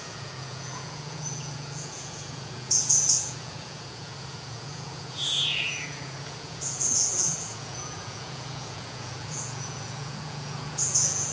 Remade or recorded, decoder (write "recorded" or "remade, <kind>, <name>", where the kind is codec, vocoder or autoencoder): remade, vocoder, Vocos